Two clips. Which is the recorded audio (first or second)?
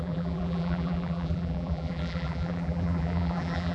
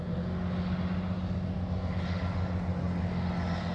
second